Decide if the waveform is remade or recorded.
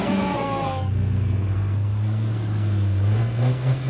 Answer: remade